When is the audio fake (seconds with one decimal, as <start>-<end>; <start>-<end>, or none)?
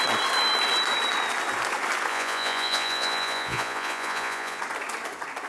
2.1-4.6